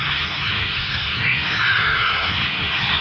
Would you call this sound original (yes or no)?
no